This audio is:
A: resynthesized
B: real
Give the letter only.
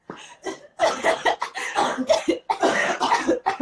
B